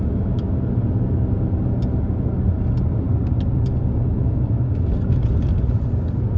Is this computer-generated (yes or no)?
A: no